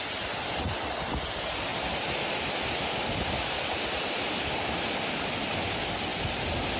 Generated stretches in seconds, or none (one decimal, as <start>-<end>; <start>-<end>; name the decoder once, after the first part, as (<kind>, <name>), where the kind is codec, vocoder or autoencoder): none